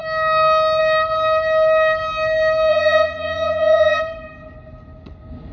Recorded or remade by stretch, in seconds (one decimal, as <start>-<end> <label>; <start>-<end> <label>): 0.0-2.7 recorded; 2.7-4.0 remade; 4.0-5.5 recorded